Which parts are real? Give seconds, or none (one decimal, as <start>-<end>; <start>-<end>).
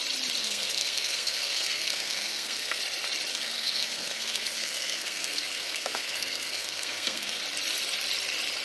0.0-0.4; 2.8-3.3; 7.4-8.6